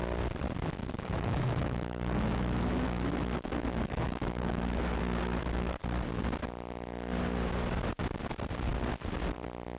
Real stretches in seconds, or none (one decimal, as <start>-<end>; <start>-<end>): 0.0-0.8; 5.8-9.8